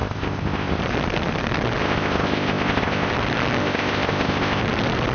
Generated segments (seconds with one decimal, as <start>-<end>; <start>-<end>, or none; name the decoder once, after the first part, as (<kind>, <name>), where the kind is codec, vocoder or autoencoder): 0.0-0.8 (codec, ZipCodec); 1.8-3.1; 3.6-4.6